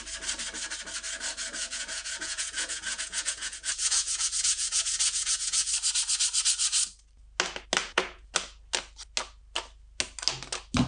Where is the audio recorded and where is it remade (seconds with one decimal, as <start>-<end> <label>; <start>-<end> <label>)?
0.0-1.6 recorded; 1.6-5.7 remade; 5.7-7.8 recorded; 7.8-8.3 remade; 8.3-10.9 recorded